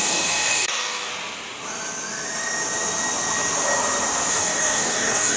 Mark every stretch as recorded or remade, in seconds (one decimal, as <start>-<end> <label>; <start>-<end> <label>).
0.0-1.1 remade; 1.1-4.3 recorded; 4.3-5.4 remade